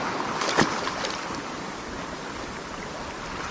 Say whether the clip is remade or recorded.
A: recorded